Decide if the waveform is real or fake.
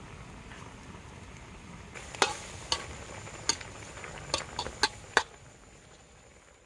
real